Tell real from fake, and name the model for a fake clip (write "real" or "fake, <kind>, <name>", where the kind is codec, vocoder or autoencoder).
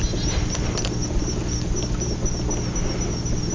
real